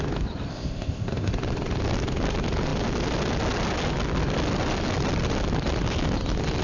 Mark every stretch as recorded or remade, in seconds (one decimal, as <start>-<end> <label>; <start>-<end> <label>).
0.0-0.5 recorded; 0.5-1.3 remade; 1.3-6.6 recorded